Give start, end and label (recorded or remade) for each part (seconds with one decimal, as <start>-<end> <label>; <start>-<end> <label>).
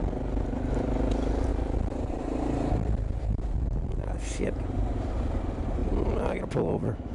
0.0-1.5 recorded; 1.5-5.1 remade; 5.1-7.1 recorded